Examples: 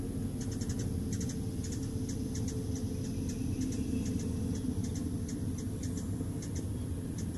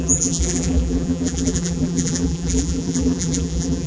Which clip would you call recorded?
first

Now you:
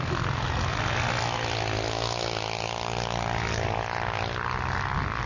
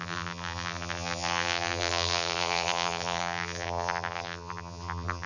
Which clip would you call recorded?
first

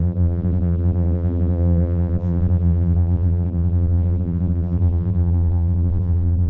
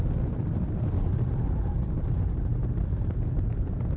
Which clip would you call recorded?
second